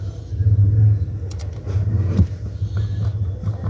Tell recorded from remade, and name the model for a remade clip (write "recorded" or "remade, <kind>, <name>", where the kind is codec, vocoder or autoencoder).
recorded